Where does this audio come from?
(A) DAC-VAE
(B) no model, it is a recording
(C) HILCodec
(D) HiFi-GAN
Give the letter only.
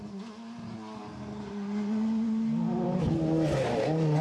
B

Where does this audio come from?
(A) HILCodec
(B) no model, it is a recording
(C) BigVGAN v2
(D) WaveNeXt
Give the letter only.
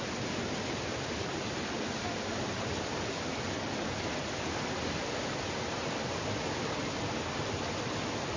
B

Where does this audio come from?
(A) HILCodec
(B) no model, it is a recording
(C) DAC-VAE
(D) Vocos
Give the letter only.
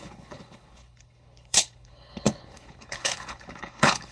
A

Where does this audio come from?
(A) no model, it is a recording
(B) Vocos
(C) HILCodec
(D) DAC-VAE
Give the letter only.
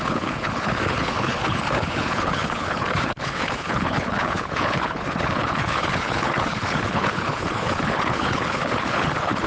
C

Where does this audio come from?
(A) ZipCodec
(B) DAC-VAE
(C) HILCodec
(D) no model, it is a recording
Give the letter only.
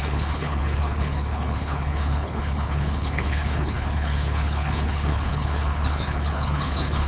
C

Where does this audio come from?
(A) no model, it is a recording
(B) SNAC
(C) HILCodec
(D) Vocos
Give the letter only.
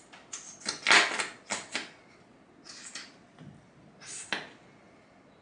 A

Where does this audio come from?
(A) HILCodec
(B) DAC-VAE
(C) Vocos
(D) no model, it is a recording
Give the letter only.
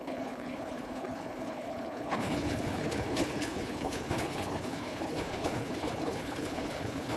A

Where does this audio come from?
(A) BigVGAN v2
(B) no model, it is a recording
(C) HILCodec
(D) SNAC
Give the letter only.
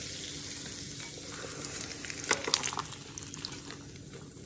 B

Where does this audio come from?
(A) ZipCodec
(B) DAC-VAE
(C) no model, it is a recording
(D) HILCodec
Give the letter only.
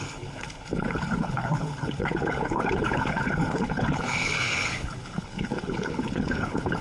D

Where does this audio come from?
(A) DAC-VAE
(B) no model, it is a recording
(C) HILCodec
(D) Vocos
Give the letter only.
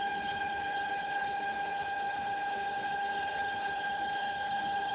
C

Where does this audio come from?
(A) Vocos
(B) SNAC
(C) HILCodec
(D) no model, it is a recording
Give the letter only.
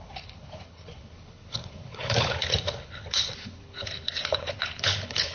C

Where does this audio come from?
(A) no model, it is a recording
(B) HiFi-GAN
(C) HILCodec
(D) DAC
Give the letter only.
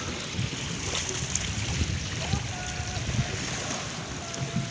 A